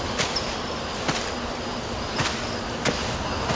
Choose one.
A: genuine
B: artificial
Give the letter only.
A